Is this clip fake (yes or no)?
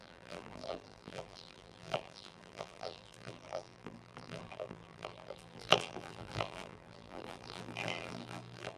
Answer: yes